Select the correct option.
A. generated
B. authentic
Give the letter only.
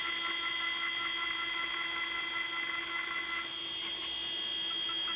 B